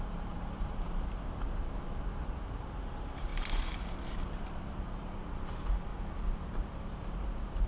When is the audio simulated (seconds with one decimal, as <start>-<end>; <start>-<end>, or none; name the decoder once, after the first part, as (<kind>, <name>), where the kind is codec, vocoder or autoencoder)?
0.0-5.9 (vocoder, BigVGAN v2); 6.5-7.7